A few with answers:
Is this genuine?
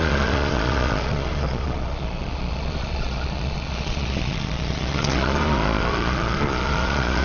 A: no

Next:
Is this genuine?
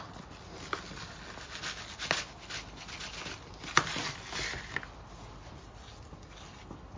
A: yes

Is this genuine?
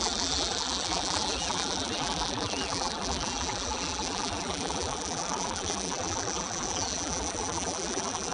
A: no